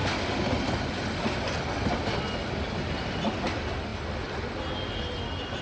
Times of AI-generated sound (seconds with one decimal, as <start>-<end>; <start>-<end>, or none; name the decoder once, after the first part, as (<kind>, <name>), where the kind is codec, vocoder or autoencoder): none